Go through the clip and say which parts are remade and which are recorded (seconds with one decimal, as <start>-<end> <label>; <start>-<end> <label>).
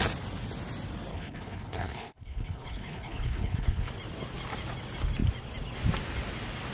0.0-1.1 recorded; 1.1-3.9 remade; 3.9-6.7 recorded